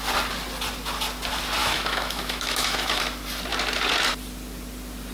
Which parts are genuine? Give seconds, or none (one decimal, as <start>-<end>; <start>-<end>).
0.0-1.6; 3.0-5.1